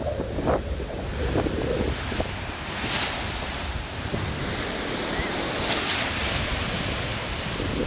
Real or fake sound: real